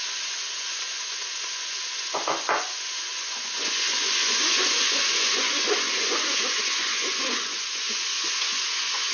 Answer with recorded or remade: remade